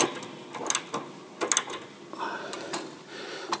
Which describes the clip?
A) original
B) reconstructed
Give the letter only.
A